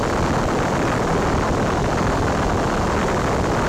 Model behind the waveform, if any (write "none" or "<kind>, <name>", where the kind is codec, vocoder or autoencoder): none